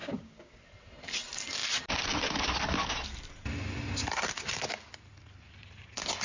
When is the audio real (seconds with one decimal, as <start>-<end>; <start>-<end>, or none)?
0.6-6.2